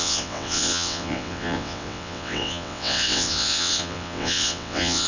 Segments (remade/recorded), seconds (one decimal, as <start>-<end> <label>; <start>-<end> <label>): 0.0-5.1 remade